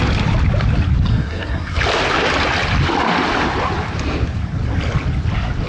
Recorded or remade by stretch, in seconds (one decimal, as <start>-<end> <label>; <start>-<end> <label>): 0.0-1.1 recorded; 1.1-1.8 remade; 1.8-5.7 recorded

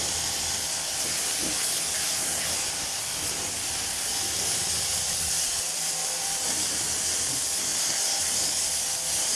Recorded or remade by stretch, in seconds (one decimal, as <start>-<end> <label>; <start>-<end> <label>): 0.0-9.4 recorded

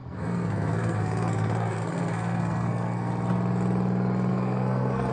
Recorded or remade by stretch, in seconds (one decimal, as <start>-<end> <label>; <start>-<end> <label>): 0.0-3.1 remade; 3.1-4.3 recorded; 4.3-5.1 remade